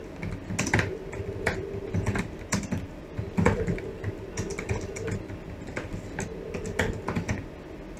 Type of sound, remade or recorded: recorded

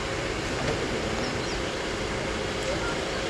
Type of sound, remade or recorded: remade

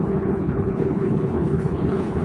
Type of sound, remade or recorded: remade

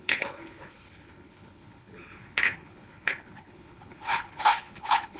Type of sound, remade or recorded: remade